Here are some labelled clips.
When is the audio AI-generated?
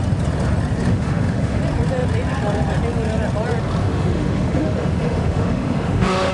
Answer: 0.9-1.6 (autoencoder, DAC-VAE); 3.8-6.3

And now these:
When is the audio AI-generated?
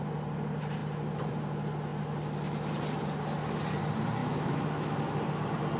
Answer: 4.2-5.2 (autoencoder, DAC-VAE)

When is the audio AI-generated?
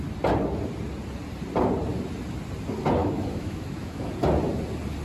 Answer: 3.0-4.1 (autoencoder, DAC-VAE)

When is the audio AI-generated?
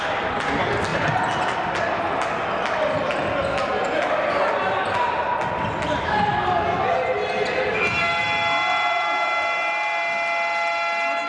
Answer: none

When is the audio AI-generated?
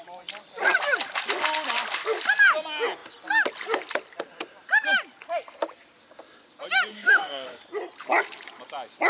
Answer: 6.9-7.6 (autoencoder, DAC-VAE)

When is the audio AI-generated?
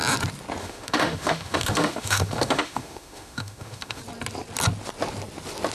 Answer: 0.6-4.0 (autoencoder, DAC-VAE)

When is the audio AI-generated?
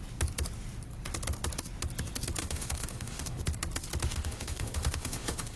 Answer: 2.4-3.4 (autoencoder, DAC-VAE); 4.1-5.6